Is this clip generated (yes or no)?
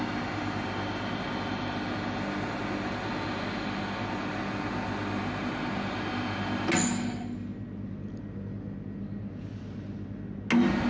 no